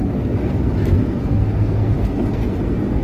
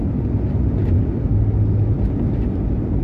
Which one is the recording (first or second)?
second